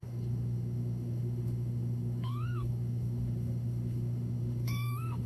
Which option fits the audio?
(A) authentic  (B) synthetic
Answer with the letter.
B